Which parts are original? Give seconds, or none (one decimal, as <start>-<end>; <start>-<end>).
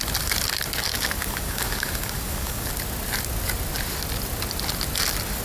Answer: 0.0-0.9; 2.7-5.4